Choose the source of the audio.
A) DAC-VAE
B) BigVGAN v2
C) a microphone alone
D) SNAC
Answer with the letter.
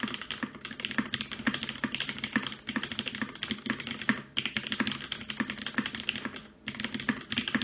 C